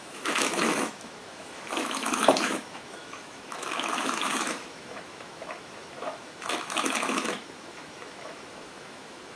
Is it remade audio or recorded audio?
remade